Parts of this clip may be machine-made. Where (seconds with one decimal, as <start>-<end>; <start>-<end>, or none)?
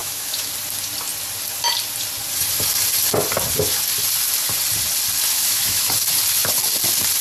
0.0-0.5; 5.3-5.9